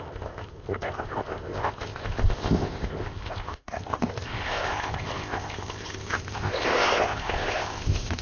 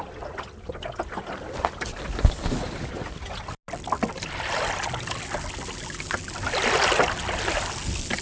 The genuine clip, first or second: second